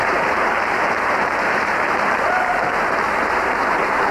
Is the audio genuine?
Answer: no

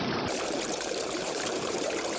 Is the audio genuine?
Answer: no